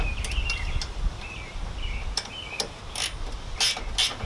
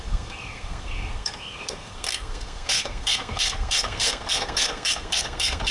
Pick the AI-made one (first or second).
second